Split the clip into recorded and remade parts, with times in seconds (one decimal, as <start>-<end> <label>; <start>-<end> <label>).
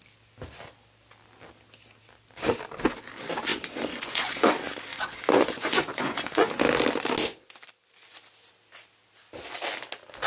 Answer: 0.0-3.5 recorded; 3.5-4.5 remade; 4.5-4.9 recorded; 4.9-6.5 remade; 6.5-10.3 recorded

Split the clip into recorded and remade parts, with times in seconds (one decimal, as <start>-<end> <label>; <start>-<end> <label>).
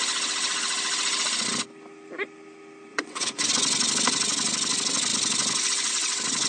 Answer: 0.0-2.9 recorded; 2.9-3.5 remade; 3.5-6.5 recorded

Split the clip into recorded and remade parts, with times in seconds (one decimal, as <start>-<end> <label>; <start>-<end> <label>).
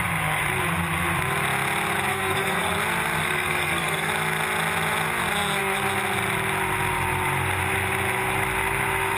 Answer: 0.0-2.1 recorded; 2.1-2.7 remade; 2.7-3.2 recorded; 3.2-4.1 remade; 4.1-9.2 recorded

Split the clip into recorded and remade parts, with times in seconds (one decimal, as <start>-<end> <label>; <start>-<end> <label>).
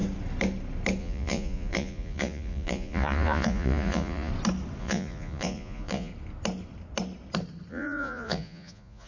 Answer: 0.0-1.0 recorded; 1.0-4.3 remade; 4.3-4.8 recorded; 4.8-6.1 remade; 6.1-7.7 recorded; 7.7-9.1 remade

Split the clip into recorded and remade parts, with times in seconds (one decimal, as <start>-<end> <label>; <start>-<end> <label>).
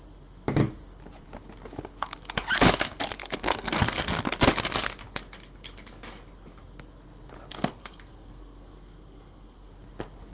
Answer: 0.0-3.2 recorded; 3.2-4.0 remade; 4.0-7.8 recorded; 7.8-9.7 remade; 9.7-10.3 recorded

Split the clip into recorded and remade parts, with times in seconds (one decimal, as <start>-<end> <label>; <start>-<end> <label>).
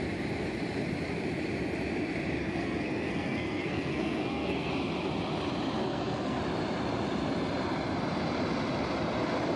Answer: 0.0-2.4 recorded; 2.4-4.7 remade; 4.7-5.8 recorded; 5.8-6.4 remade; 6.4-9.6 recorded